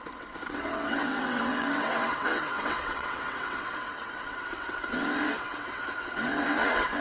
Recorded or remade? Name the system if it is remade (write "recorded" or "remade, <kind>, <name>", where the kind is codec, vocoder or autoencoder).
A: remade, vocoder, WaveNeXt